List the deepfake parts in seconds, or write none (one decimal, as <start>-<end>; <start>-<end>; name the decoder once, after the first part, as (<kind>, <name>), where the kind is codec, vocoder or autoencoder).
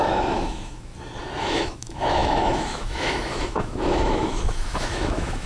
0.0-0.9 (autoencoder, DAC-VAE); 1.4-5.5